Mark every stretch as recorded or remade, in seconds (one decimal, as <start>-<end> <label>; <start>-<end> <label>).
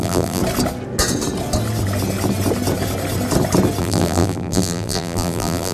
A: 0.0-0.4 remade; 0.4-3.8 recorded; 3.8-5.7 remade